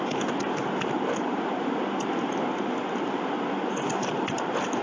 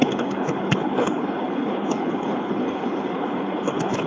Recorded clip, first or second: first